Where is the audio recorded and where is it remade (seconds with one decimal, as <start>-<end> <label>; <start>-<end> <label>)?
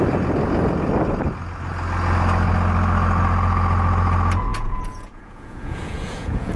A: 0.0-4.5 recorded; 4.5-6.6 remade